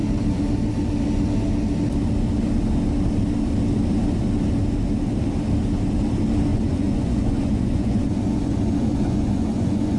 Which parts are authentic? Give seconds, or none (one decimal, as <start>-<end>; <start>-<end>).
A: 0.0-6.5